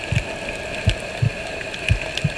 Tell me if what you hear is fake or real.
real